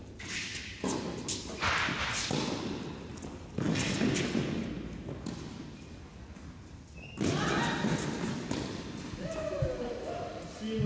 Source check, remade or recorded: recorded